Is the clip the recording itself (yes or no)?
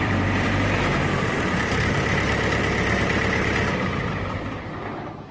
no